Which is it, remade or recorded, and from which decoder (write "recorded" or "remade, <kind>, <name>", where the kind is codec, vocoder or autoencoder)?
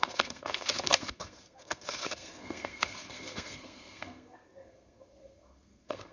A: remade, codec, SNAC